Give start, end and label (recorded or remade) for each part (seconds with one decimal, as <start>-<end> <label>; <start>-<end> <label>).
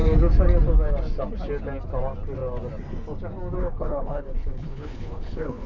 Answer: 0.0-3.6 recorded; 3.6-5.7 remade